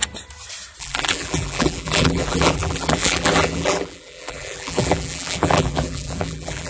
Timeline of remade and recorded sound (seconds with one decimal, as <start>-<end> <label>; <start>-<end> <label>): 0.0-0.8 recorded; 0.8-6.7 remade